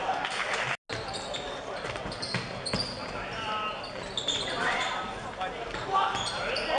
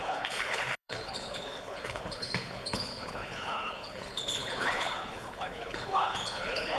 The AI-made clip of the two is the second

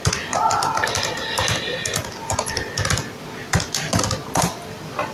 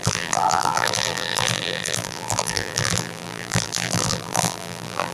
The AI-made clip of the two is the second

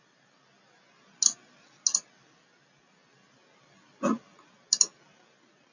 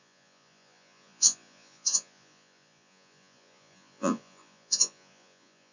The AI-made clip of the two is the second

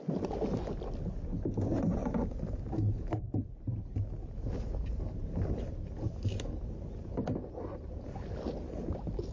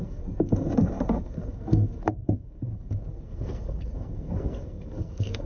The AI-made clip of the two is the second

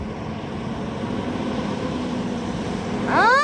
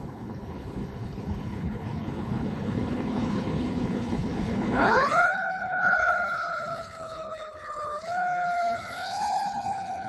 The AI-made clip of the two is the second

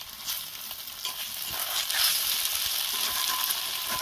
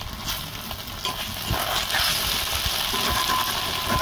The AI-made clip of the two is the first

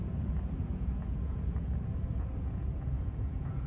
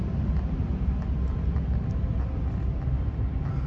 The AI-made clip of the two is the first